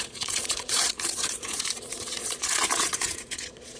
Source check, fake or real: fake